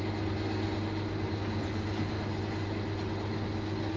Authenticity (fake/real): real